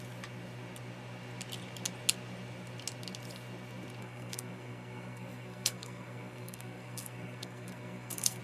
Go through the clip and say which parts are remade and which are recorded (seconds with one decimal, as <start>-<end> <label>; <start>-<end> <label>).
0.0-4.0 recorded; 4.0-8.4 remade